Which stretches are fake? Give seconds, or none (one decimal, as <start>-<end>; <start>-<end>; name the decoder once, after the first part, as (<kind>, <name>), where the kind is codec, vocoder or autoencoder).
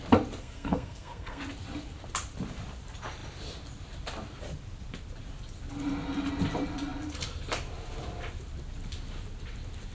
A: 0.4-1.4 (codec, SNAC)